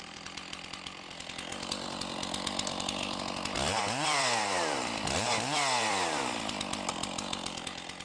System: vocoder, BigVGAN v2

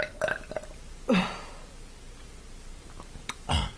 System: vocoder, BigVGAN v2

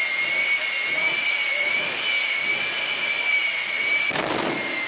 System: none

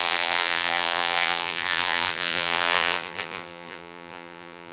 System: vocoder, BigVGAN v2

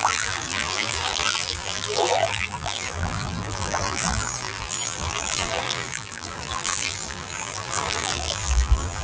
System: vocoder, BigVGAN v2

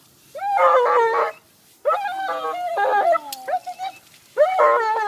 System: none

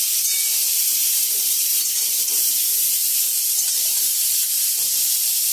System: vocoder, BigVGAN v2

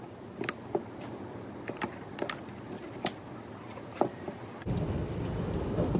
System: none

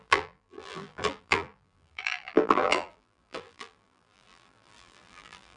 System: vocoder, BigVGAN v2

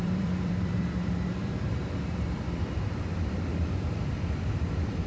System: vocoder, BigVGAN v2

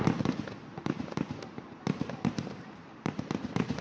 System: vocoder, BigVGAN v2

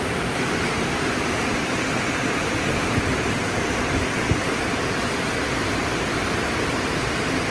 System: vocoder, BigVGAN v2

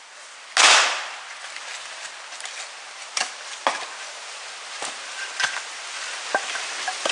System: none